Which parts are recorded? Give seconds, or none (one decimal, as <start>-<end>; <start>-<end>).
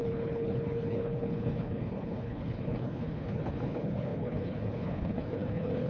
none